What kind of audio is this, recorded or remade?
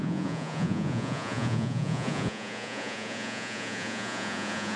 remade